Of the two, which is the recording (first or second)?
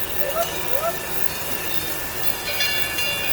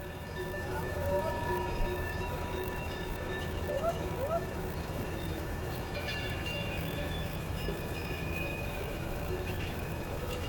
first